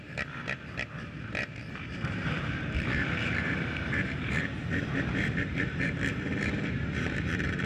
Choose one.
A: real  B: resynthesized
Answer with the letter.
B